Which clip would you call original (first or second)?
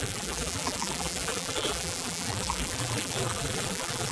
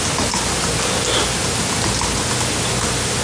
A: second